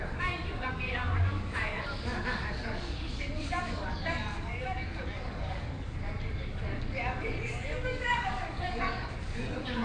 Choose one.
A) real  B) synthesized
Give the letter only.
B